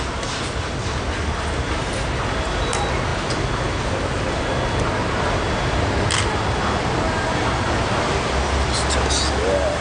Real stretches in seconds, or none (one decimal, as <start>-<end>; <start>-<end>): 0.0-9.8

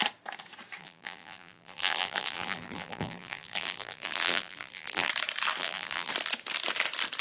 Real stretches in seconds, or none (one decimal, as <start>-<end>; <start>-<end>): 0.0-0.8; 5.1-5.6; 6.1-7.2

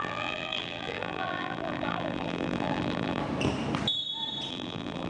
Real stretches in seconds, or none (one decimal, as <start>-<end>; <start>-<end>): 3.2-4.5

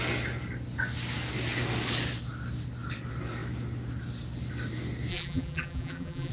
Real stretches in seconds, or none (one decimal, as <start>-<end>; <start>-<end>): 0.0-5.1

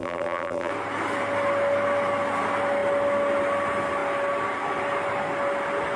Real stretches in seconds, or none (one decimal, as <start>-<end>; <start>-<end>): 0.7-6.0

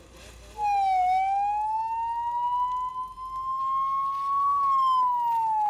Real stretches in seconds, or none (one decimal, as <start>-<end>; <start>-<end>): 0.0-5.7

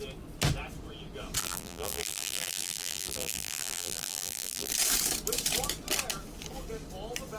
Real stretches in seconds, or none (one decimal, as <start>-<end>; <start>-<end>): 0.0-1.4; 4.7-7.4

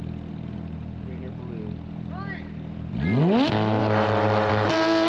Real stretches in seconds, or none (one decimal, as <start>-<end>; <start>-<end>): 0.0-5.1